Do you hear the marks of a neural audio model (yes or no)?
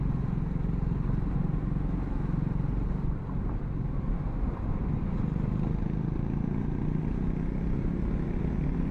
no